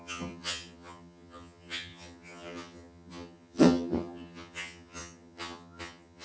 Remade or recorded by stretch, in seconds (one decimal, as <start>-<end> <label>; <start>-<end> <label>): 0.0-6.2 remade